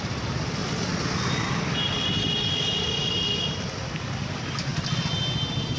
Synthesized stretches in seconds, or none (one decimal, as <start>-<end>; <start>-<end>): none